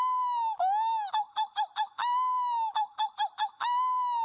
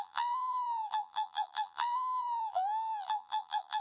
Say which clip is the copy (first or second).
second